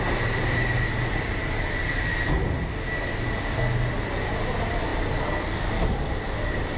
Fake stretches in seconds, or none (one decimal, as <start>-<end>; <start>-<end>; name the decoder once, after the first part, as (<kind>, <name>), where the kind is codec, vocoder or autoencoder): 0.0-0.6 (vocoder, BigVGAN v2); 1.2-2.1; 4.2-4.9; 5.7-6.8